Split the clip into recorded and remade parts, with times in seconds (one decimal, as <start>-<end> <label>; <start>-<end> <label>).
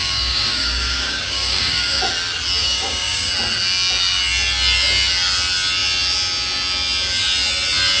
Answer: 0.0-2.0 remade; 2.0-2.6 recorded; 2.6-3.3 remade; 3.3-8.0 recorded